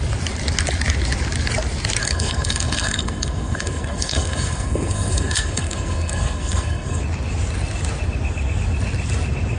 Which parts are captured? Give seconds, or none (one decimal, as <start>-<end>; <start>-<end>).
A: 0.0-2.0; 7.0-9.6